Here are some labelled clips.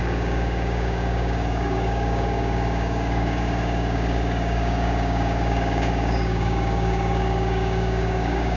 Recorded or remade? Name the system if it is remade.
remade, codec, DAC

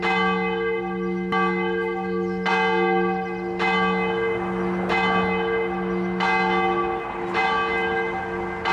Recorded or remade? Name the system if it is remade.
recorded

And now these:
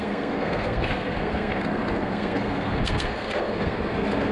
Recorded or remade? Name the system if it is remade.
remade, codec, SNAC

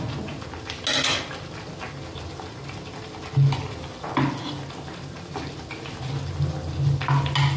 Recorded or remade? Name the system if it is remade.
recorded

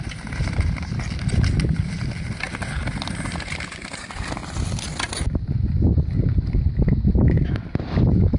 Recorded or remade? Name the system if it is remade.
recorded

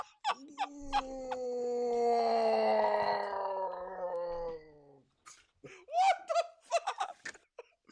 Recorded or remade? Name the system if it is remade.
recorded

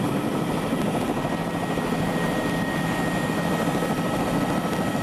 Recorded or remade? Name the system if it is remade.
recorded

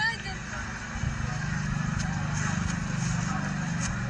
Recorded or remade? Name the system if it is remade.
recorded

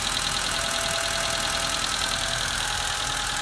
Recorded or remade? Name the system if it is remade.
recorded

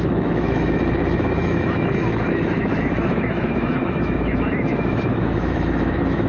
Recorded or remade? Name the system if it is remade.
remade, autoencoder, DAC-VAE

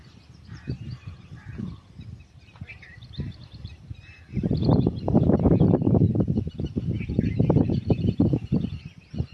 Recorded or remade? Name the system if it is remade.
remade, vocoder, BigVGAN v2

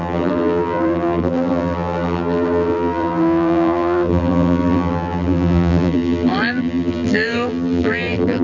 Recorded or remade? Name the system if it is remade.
remade, vocoder, BigVGAN v2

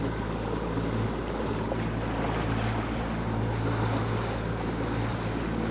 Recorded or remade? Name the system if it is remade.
recorded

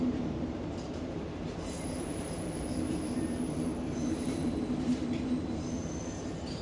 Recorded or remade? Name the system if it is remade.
remade, vocoder, BigVGAN v2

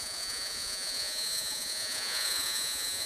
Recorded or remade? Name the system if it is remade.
remade, vocoder, Vocos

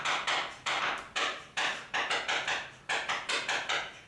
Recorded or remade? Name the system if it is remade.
remade, vocoder, BigVGAN v2